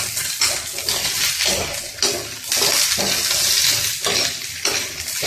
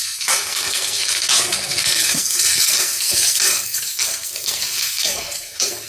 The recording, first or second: first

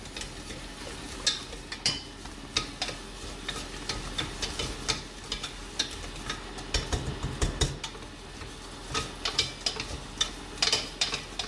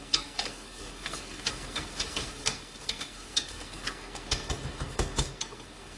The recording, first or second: first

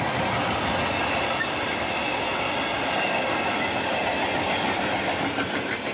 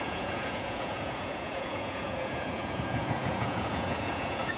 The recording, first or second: first